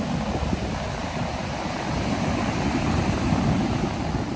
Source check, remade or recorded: recorded